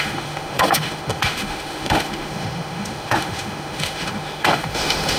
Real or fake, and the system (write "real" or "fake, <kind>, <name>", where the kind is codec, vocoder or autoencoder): fake, autoencoder, DAC-VAE